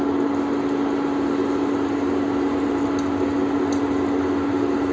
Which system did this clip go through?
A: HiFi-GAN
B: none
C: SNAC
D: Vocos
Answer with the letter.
B